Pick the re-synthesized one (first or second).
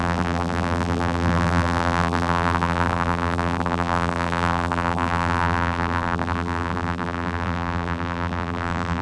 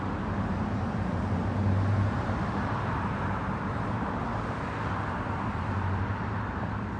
first